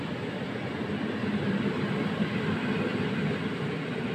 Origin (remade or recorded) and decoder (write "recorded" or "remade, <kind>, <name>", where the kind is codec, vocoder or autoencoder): recorded